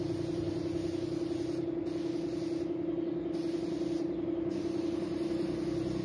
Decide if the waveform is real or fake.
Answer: real